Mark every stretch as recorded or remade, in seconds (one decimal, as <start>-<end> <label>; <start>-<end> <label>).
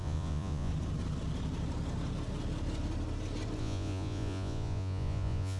0.0-0.7 remade; 0.7-3.6 recorded; 3.6-5.6 remade